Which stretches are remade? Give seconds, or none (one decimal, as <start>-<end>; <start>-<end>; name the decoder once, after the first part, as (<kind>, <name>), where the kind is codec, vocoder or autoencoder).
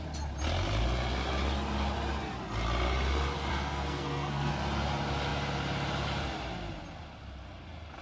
3.5-4.5 (codec, SNAC)